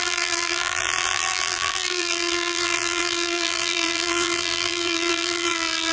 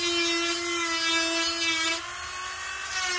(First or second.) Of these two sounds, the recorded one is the second